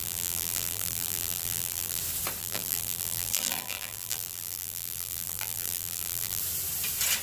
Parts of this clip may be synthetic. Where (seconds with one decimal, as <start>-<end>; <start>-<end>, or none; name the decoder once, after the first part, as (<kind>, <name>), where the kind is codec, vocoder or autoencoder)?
0.0-2.0 (vocoder, BigVGAN v2); 2.4-6.4